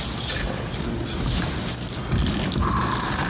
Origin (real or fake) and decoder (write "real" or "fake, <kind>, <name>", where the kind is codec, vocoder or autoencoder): real